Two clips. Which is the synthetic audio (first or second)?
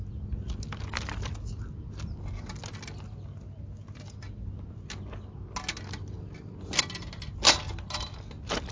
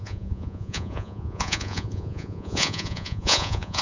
second